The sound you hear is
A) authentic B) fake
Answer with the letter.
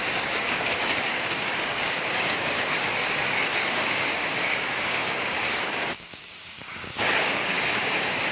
B